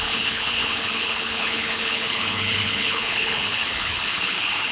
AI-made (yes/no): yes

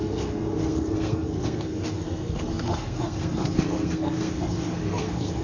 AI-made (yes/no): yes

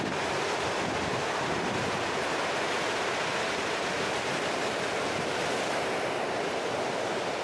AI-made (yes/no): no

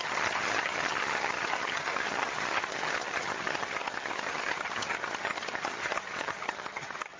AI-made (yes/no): yes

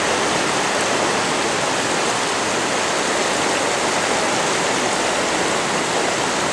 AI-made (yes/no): no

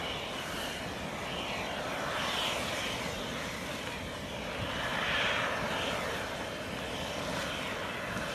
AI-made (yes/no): no